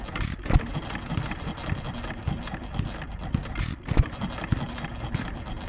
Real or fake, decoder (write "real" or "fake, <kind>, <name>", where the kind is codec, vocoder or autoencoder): real